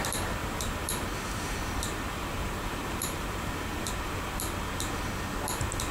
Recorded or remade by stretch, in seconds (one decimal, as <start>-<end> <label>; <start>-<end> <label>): 0.0-0.4 recorded; 0.4-3.9 remade; 3.9-5.9 recorded